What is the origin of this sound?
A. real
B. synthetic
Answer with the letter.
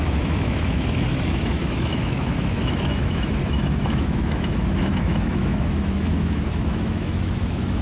B